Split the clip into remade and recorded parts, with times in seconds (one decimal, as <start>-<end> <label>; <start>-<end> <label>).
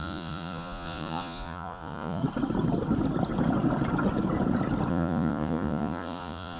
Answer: 0.0-2.2 remade; 2.2-4.9 recorded; 4.9-6.6 remade